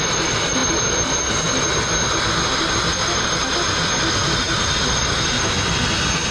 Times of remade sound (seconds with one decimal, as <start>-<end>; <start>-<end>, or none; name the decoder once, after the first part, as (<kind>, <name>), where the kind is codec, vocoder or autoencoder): none